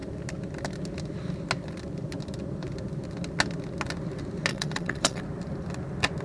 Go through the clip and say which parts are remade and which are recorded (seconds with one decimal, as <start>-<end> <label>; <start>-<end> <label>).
0.0-4.5 recorded; 4.5-5.2 remade; 5.2-6.2 recorded